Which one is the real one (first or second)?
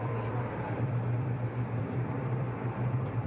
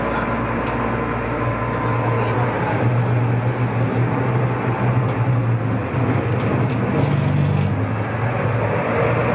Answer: second